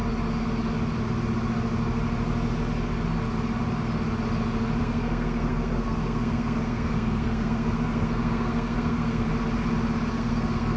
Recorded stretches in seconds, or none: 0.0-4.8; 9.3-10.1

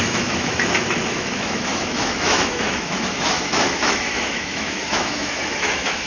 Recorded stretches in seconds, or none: none

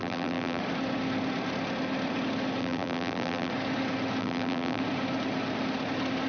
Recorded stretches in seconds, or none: 0.6-2.6; 3.5-4.2; 4.8-6.3

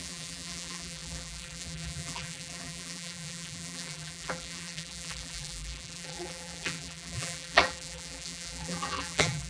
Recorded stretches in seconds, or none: none

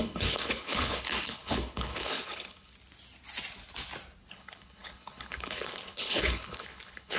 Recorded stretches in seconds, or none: 2.7-4.3

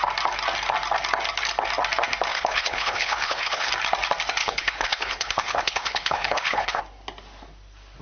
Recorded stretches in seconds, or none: 0.0-2.3; 3.7-4.4; 6.8-8.0

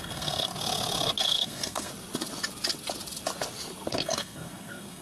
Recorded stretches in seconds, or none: 0.5-1.2; 1.9-3.9

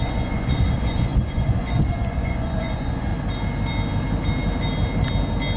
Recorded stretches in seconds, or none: 3.1-5.6